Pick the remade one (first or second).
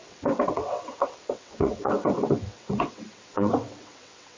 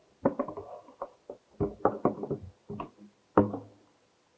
first